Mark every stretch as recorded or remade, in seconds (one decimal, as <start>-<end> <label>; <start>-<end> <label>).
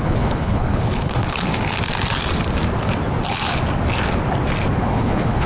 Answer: 0.0-1.5 remade; 1.5-4.8 recorded; 4.8-5.5 remade